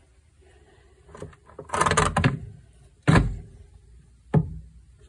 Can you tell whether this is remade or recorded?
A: recorded